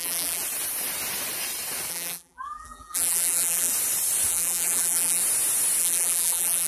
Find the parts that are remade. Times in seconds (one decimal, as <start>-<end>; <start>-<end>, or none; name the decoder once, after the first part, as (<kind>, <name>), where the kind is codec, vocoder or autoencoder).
0.0-0.4 (vocoder, BigVGAN v2); 1.9-3.7; 4.3-5.2; 5.8-6.7